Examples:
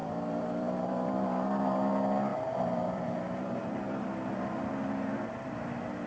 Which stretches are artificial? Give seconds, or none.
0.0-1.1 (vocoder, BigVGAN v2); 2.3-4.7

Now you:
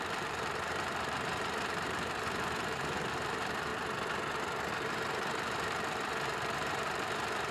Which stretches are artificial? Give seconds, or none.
0.0-3.7 (vocoder, BigVGAN v2); 4.7-7.5

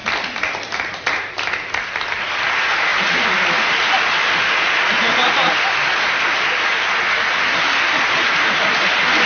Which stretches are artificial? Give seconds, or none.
none

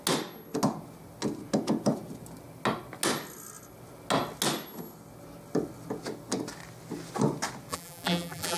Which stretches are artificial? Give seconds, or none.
7.7-8.6 (vocoder, BigVGAN v2)

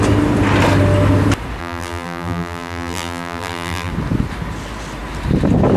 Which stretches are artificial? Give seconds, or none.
1.6-3.9 (vocoder, BigVGAN v2)